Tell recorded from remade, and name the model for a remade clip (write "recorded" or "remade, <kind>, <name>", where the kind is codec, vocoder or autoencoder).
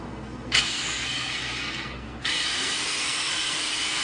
remade, codec, SNAC